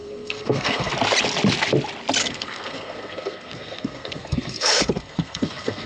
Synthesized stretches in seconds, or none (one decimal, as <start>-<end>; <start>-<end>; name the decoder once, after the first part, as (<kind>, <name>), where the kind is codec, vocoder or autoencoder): 0.0-0.9 (codec, SNAC); 2.2-5.9